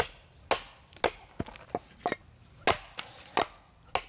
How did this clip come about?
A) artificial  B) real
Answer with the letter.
B